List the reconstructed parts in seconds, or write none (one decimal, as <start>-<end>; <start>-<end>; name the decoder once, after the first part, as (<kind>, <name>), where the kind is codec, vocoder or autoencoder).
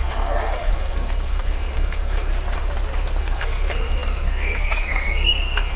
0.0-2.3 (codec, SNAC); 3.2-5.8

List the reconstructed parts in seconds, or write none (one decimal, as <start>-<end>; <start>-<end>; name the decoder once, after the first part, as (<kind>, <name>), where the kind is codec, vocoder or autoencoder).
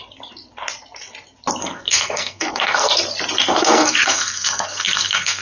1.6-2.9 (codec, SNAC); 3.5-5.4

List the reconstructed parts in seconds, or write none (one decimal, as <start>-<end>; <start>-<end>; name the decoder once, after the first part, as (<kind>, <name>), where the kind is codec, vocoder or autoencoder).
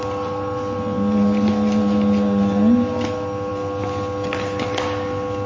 none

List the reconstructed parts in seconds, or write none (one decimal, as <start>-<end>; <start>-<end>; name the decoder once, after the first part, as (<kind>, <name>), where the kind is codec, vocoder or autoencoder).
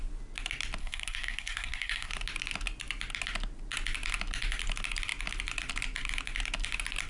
0.8-2.1 (codec, SNAC)